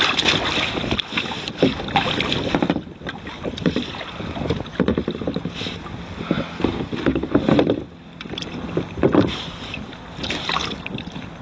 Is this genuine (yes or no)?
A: yes